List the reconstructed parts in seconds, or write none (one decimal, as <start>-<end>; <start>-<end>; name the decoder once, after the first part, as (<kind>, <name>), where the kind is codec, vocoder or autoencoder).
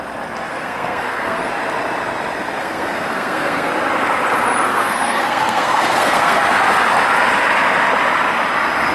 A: 0.5-1.5 (codec, SNAC); 2.6-3.7; 4.7-6.4